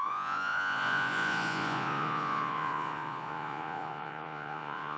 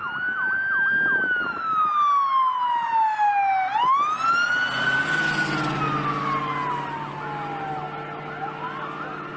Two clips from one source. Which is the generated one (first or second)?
first